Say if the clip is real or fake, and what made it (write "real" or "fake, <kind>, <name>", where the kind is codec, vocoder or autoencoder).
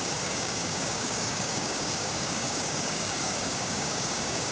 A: fake, codec, DAC